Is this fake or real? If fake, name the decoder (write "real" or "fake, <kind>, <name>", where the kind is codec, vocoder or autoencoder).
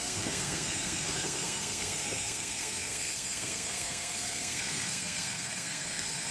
fake, codec, SNAC